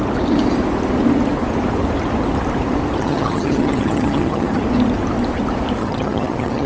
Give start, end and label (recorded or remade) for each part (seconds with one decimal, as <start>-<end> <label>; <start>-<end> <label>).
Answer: 0.0-3.0 recorded; 3.0-4.6 remade; 4.6-5.8 recorded; 5.8-6.7 remade